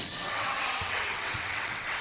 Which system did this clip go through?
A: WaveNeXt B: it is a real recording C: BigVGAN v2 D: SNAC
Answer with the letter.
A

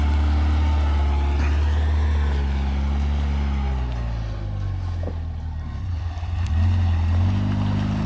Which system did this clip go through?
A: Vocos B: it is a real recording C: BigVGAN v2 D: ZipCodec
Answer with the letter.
B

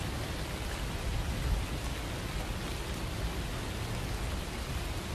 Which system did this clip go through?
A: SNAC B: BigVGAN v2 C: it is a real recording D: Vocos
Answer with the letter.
C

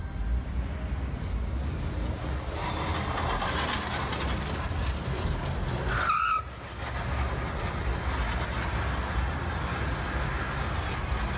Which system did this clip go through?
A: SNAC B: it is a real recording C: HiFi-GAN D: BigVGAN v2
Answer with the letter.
B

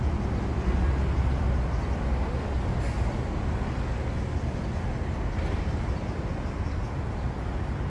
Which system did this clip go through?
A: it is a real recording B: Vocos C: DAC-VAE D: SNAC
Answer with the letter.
A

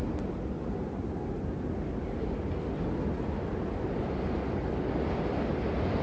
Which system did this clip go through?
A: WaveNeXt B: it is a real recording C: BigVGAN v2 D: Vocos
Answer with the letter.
B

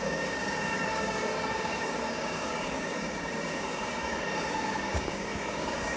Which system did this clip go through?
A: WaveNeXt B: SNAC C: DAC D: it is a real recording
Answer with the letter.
C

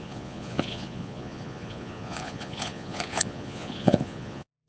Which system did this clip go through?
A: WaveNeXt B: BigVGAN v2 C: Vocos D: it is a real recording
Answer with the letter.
C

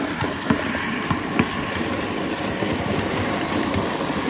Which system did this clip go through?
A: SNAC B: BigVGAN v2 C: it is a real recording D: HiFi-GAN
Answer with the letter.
B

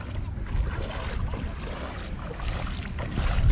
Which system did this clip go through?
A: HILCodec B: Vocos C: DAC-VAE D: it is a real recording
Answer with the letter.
D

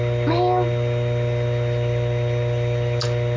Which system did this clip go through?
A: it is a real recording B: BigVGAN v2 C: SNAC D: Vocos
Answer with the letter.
A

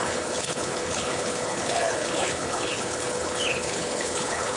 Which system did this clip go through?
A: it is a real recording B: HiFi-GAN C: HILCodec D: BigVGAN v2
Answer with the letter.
C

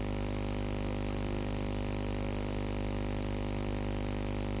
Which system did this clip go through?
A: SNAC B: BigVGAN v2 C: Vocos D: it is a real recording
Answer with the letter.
D